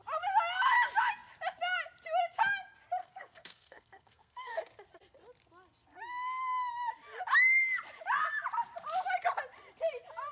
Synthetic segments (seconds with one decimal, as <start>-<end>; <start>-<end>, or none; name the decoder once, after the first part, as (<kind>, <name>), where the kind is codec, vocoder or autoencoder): 3.0-4.6 (codec, SNAC)